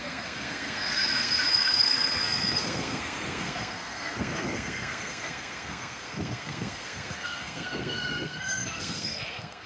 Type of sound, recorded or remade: remade